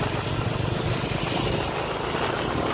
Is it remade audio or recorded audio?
recorded